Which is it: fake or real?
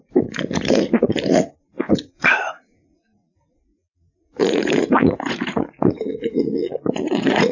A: fake